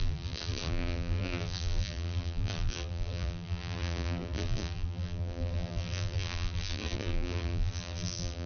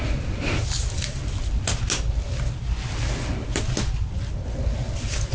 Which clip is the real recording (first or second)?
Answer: second